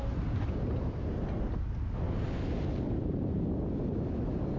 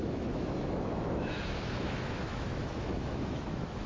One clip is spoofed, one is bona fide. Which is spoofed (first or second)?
second